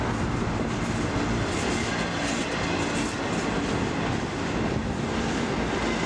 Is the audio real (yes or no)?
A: yes